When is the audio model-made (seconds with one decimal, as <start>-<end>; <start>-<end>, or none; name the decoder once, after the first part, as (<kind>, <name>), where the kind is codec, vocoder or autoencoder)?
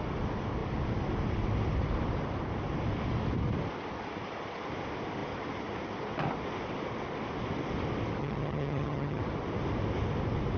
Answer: 8.2-9.2 (vocoder, HiFi-GAN)